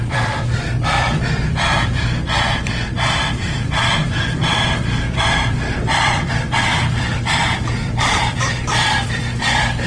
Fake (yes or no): yes